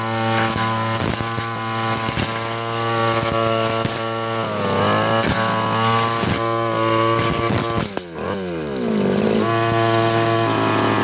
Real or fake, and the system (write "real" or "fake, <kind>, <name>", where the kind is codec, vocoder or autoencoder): real